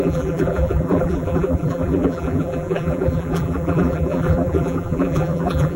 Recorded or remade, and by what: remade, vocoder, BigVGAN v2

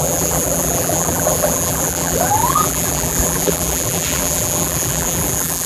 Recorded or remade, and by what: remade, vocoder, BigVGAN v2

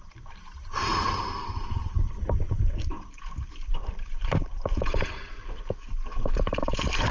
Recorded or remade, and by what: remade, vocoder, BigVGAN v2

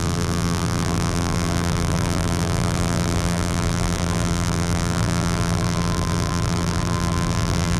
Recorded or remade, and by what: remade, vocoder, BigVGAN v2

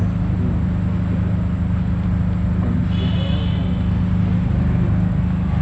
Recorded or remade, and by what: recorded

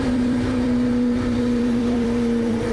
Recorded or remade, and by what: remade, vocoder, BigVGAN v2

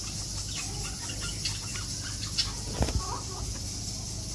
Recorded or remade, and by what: recorded